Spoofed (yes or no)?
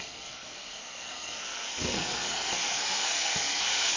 yes